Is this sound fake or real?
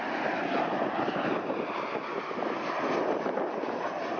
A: real